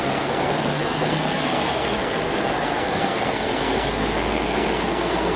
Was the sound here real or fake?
fake